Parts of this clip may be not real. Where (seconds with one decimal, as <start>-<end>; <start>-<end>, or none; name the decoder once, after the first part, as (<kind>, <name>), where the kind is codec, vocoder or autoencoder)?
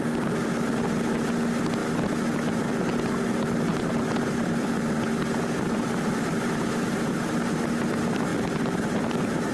3.7-7.2 (vocoder, BigVGAN v2); 8.3-9.5